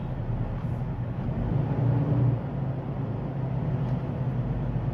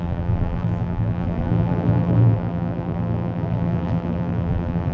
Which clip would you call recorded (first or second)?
first